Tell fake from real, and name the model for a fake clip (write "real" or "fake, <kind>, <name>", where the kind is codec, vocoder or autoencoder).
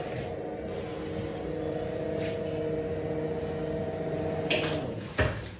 real